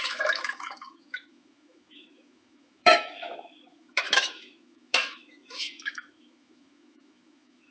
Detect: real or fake fake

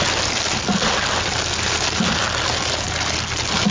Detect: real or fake real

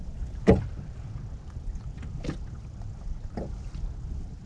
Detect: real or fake real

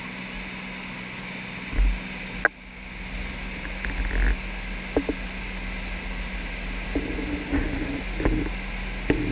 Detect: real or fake real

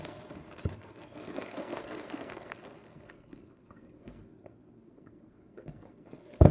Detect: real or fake fake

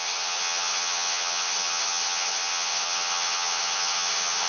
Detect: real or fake fake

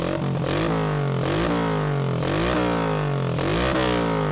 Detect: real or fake real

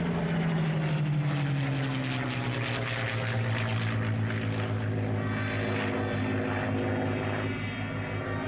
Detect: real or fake real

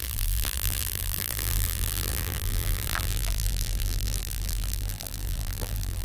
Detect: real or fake fake